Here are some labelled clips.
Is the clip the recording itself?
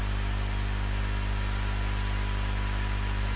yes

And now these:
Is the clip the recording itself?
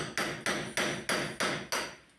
yes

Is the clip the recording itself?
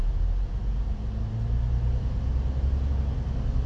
yes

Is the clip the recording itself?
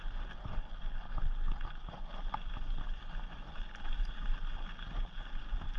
yes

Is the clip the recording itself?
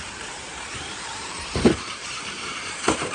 no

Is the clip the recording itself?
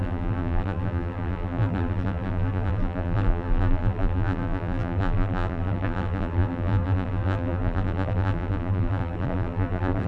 no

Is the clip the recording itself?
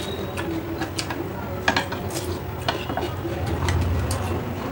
yes